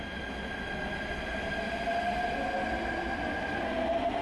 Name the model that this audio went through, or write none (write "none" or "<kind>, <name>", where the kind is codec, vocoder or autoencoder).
none